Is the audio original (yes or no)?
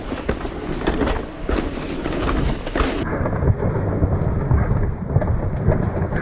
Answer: yes